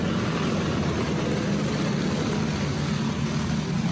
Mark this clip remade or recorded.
recorded